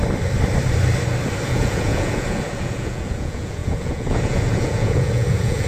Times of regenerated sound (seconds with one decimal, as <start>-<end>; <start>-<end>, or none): 1.5-5.7